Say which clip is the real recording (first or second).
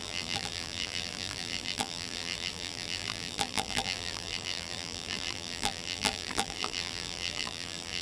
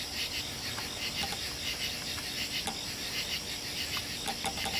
second